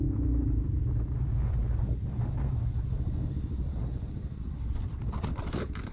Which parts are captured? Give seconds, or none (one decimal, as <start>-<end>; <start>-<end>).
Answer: 0.0-5.9